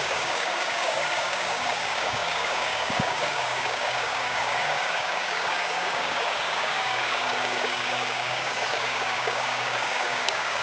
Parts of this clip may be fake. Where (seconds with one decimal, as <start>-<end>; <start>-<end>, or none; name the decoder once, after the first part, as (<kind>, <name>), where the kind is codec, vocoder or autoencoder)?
0.0-10.6 (codec, DAC)